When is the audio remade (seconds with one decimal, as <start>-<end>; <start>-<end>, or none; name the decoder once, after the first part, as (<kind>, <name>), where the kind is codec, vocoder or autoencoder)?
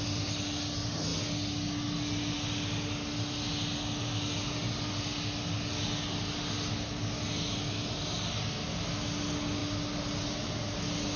none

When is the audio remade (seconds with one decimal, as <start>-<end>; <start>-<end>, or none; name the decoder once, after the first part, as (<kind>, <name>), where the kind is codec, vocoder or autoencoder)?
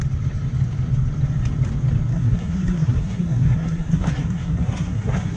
2.1-5.4 (codec, SNAC)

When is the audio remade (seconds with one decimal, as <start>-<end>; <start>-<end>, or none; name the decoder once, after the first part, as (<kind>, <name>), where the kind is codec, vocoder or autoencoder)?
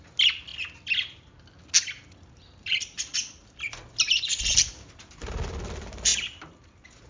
0.0-0.5 (vocoder, BigVGAN v2); 2.8-7.1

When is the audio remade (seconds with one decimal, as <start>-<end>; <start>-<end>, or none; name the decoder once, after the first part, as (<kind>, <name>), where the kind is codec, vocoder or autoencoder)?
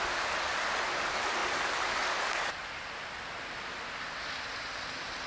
none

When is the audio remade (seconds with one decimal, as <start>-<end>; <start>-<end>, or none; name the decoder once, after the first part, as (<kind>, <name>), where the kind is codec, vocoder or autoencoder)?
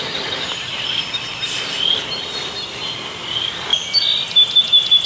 none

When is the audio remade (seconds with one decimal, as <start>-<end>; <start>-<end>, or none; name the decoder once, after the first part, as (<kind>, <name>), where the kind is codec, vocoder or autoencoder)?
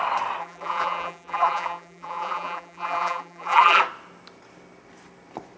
0.4-3.8 (vocoder, BigVGAN v2)